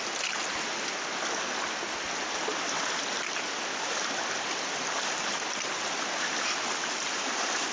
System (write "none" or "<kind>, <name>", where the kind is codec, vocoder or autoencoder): none